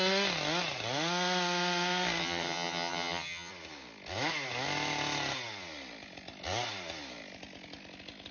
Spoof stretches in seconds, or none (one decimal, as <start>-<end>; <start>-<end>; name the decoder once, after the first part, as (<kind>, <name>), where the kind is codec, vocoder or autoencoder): 2.2-3.5 (vocoder, HiFi-GAN)